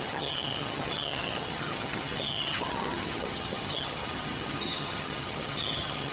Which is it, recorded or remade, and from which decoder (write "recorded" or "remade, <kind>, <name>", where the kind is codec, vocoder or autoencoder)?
remade, vocoder, HiFi-GAN